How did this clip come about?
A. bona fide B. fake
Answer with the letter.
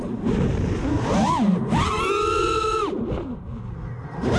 A